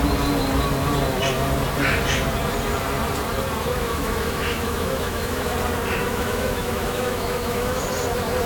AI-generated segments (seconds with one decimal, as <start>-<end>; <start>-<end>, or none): 3.7-5.5; 6.0-7.8